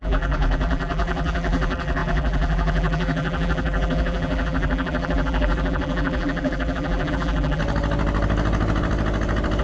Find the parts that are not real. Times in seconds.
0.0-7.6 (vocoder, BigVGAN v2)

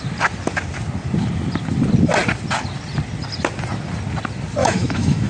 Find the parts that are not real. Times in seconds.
4.6-5.3 (autoencoder, DAC-VAE)

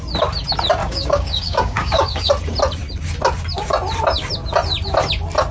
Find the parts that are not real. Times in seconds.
0.8-2.3 (codec, DAC)

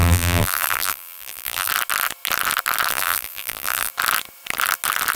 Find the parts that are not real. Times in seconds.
0.0-1.7 (vocoder, BigVGAN v2); 2.9-3.9